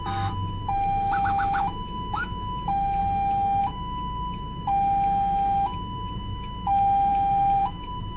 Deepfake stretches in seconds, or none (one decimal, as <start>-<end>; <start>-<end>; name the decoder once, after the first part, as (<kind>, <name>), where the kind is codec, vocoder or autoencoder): 0.0-3.0 (autoencoder, DAC-VAE); 3.6-8.2